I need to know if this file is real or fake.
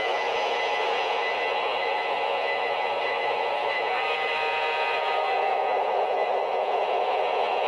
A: fake